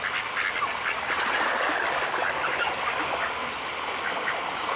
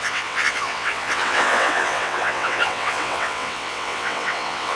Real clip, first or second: first